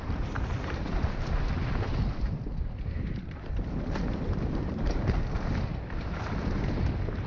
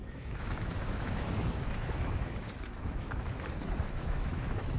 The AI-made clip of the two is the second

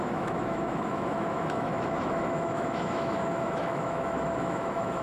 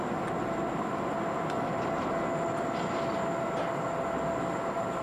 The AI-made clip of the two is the first